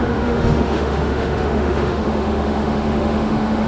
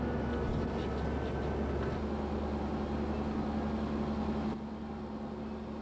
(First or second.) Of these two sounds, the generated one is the first